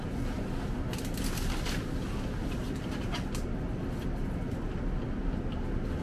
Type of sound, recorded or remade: recorded